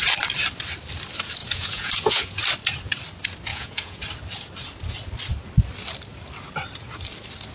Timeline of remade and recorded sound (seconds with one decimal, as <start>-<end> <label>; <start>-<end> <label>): 0.0-1.4 recorded; 1.4-2.4 remade; 2.4-3.5 recorded; 3.5-4.0 remade; 4.0-7.5 recorded